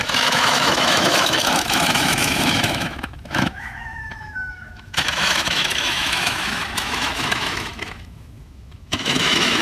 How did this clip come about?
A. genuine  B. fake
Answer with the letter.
B